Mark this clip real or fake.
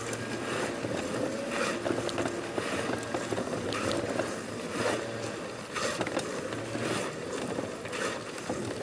real